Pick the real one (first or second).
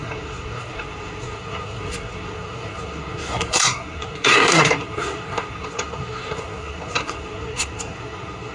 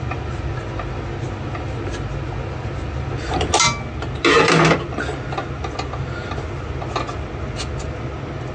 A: second